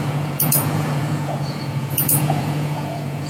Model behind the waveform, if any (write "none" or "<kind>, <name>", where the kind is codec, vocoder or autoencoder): vocoder, Vocos